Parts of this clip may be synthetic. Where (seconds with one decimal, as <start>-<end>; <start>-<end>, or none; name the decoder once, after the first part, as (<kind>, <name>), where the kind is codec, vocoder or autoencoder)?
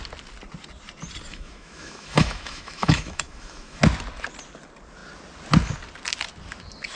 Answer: 1.3-3.8 (autoencoder, DAC-VAE)